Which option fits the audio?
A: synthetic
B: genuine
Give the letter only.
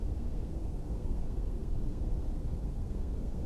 A